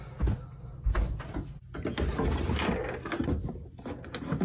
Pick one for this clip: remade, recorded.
recorded